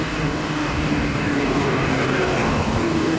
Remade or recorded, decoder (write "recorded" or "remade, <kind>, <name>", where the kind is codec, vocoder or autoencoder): remade, codec, DAC